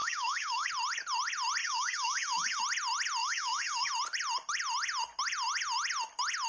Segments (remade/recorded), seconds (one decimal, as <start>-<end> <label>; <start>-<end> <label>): 0.0-0.7 remade; 0.7-1.6 recorded; 1.6-2.6 remade; 2.6-3.2 recorded; 3.2-3.9 remade; 3.9-6.5 recorded